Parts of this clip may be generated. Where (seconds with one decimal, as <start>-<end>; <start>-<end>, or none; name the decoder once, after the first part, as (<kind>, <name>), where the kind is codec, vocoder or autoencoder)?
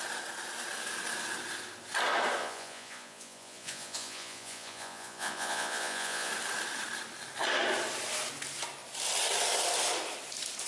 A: 2.4-6.3 (vocoder, Vocos)